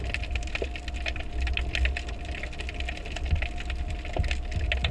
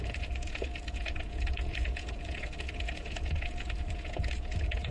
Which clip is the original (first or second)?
first